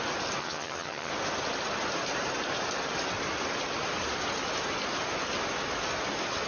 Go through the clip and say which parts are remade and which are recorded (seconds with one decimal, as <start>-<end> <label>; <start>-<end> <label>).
0.0-0.4 recorded; 0.4-1.1 remade; 1.1-6.5 recorded

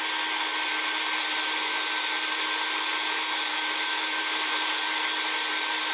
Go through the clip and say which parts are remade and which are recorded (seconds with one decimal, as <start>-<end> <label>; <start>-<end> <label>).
0.0-3.5 recorded; 3.5-4.2 remade; 4.2-5.9 recorded